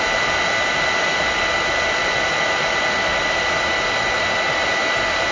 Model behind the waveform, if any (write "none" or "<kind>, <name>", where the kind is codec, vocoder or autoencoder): none